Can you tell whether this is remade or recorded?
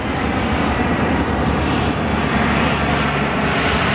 recorded